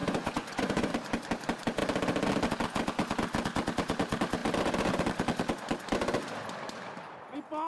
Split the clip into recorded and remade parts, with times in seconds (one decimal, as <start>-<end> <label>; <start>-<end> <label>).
0.0-0.9 remade; 0.9-7.7 recorded